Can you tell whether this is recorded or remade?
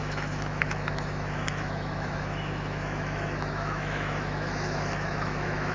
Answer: remade